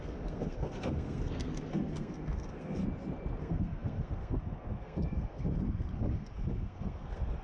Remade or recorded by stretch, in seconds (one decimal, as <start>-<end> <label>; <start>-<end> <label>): 0.0-2.8 remade; 2.8-3.4 recorded; 3.4-7.4 remade